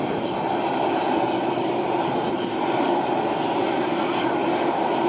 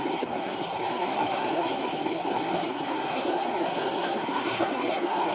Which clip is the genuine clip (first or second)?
first